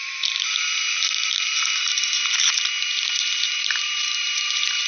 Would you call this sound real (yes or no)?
no